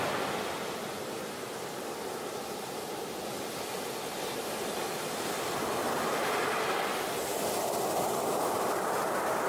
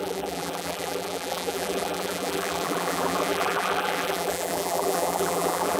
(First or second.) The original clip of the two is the first